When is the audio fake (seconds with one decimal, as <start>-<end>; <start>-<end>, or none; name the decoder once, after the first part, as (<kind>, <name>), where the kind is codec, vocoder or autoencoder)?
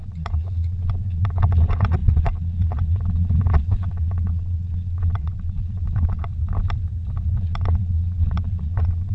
0.0-6.3 (vocoder, Vocos); 7.4-9.1